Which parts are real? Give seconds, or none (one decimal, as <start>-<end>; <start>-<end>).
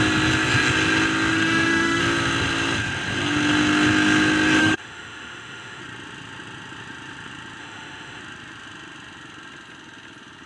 0.0-1.3; 2.0-4.6; 5.8-7.6; 8.2-10.5